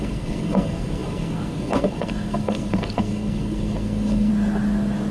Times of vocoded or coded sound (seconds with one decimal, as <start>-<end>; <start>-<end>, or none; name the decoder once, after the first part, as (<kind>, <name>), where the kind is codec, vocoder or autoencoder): 0.0-4.3 (codec, SNAC)